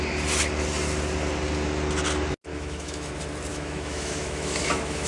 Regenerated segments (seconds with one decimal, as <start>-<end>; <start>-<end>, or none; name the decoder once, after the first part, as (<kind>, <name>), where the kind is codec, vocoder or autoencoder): 2.5-3.1 (autoencoder, DAC-VAE); 3.5-5.1